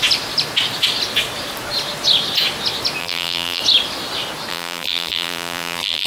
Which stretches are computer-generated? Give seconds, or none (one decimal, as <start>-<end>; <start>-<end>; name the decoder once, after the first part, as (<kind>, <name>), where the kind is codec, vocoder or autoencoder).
3.0-3.6 (vocoder, BigVGAN v2); 4.5-6.1